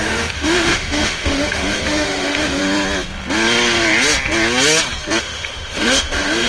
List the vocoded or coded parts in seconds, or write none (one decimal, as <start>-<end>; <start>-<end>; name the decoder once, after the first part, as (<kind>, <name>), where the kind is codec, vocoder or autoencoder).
0.0-2.6 (autoencoder, DAC-VAE); 5.2-6.5